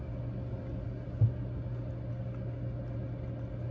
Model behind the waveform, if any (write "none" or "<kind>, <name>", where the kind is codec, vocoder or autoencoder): none